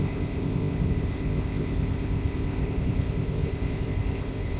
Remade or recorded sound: remade